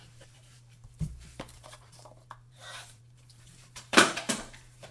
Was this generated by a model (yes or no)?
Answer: yes